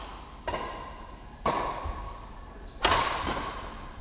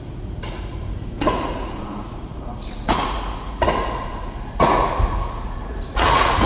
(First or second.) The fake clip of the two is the second